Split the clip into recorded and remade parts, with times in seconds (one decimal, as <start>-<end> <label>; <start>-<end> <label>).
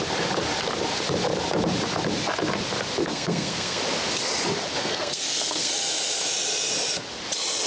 0.0-3.0 recorded; 3.0-3.8 remade; 3.8-4.8 recorded; 4.8-5.7 remade; 5.7-7.7 recorded